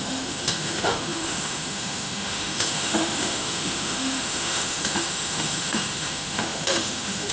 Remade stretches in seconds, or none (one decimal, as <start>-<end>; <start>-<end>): 0.0-7.3